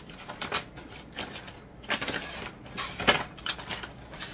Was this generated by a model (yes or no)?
no